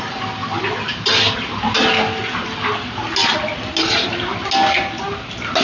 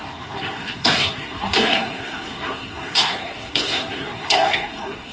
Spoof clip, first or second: second